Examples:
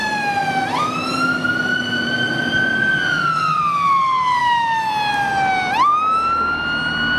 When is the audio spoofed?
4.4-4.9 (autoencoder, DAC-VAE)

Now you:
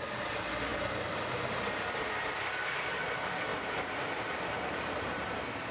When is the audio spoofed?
3.5-5.7 (vocoder, BigVGAN v2)